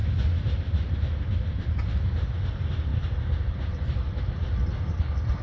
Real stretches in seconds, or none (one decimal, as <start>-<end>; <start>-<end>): 0.0-5.4